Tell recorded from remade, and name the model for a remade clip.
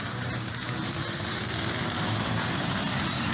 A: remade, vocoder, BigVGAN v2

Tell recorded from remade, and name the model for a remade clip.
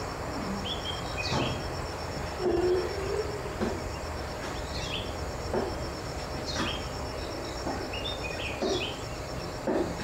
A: remade, vocoder, BigVGAN v2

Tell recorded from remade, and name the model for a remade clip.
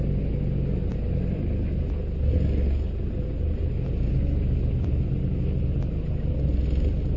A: recorded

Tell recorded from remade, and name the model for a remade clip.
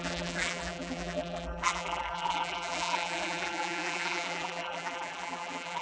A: remade, vocoder, BigVGAN v2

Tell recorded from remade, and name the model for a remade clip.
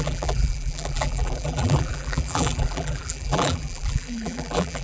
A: remade, vocoder, BigVGAN v2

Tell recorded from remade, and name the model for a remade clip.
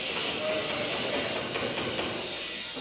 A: recorded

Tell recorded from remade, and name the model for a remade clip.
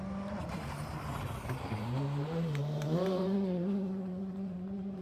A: remade, vocoder, BigVGAN v2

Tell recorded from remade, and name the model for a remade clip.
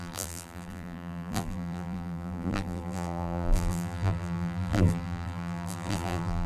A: remade, vocoder, BigVGAN v2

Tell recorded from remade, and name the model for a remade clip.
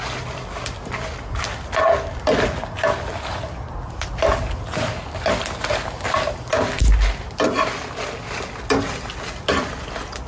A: recorded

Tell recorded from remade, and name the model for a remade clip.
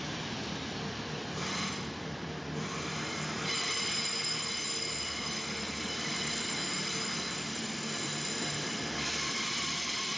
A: remade, vocoder, BigVGAN v2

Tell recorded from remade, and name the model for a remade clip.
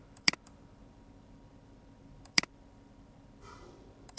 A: remade, vocoder, BigVGAN v2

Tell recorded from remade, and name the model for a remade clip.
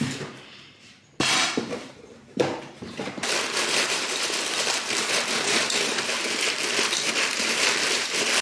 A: remade, vocoder, BigVGAN v2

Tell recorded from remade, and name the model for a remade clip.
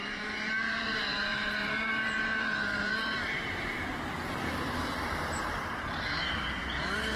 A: remade, vocoder, BigVGAN v2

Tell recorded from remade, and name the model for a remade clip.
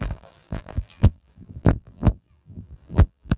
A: remade, vocoder, BigVGAN v2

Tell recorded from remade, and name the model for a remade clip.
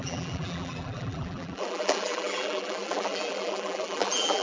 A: remade, vocoder, BigVGAN v2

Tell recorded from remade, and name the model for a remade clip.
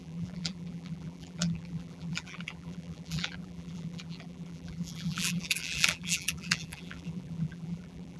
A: remade, vocoder, BigVGAN v2